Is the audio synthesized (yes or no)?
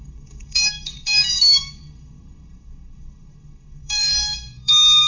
yes